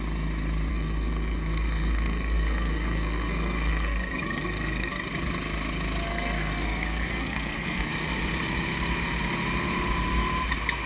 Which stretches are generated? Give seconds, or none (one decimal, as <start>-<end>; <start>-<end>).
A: 0.7-4.9; 6.1-7.9

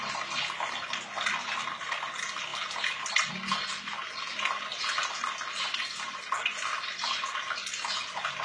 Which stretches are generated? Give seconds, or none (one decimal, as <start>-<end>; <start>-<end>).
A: none

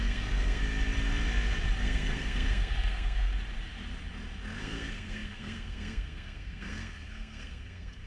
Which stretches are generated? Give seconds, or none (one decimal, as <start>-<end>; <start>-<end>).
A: 0.0-0.6; 1.8-3.3; 4.6-8.1

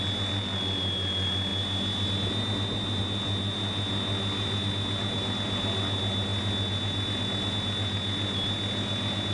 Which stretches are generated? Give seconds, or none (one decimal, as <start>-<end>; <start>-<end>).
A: none

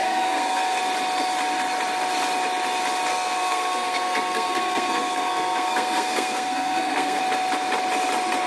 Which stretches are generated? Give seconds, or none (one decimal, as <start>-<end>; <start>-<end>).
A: 0.0-0.8; 3.1-7.2

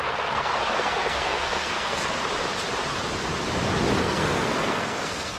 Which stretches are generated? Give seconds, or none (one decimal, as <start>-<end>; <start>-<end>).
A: 0.0-2.2; 4.0-5.4

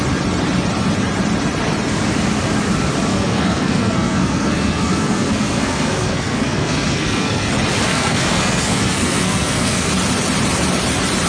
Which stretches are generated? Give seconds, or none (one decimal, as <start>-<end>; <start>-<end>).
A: 3.1-7.5; 7.9-9.9

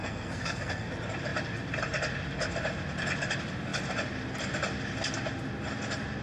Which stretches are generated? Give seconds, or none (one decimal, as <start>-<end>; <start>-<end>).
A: 0.0-0.9